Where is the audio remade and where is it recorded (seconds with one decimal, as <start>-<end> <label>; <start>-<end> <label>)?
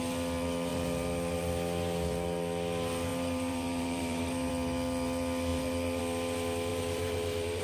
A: 0.0-0.7 recorded; 0.7-1.5 remade; 1.5-3.1 recorded; 3.1-4.5 remade; 4.5-5.5 recorded; 5.5-6.0 remade; 6.0-6.7 recorded; 6.7-7.6 remade